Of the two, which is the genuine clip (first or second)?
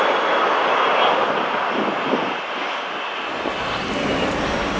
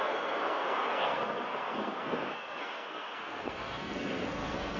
first